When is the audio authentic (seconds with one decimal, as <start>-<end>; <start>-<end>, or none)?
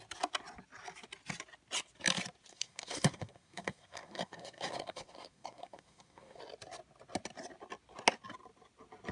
0.0-2.5; 6.4-9.1